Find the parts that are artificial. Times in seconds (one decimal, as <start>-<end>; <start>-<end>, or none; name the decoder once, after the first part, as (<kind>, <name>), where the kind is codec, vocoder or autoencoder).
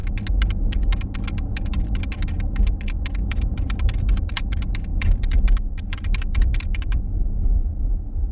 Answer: 3.2-4.1 (vocoder, BigVGAN v2); 4.9-7.0